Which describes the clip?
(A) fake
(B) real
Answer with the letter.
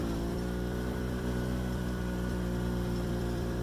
A